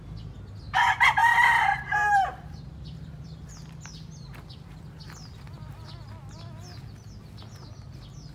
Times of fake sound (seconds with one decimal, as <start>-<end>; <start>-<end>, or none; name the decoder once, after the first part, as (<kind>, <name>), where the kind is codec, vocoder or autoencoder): 1.2-2.6 (vocoder, BigVGAN v2)